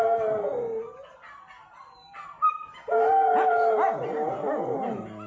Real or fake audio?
real